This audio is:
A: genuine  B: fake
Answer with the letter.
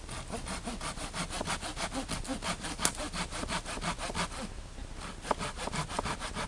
A